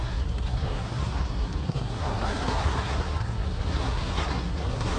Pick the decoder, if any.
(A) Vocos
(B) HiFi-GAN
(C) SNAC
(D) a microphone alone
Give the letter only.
C